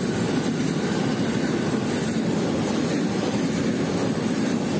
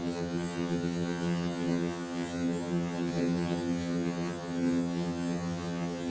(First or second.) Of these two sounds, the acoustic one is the first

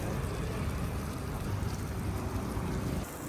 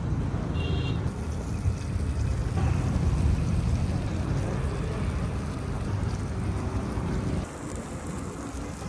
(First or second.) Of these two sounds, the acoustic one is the second